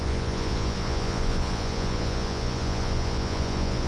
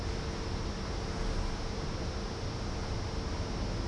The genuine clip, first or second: second